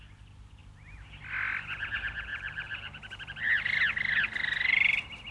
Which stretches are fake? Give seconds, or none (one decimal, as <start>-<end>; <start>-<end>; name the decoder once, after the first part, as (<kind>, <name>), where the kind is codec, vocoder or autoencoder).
2.3-3.4 (vocoder, BigVGAN v2)